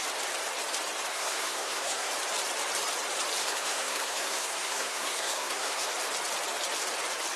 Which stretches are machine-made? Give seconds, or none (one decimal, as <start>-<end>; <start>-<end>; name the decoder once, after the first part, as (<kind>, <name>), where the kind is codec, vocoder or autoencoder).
1.1-2.1 (codec, SNAC); 3.4-5.9